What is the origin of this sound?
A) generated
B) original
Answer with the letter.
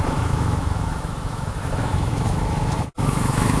A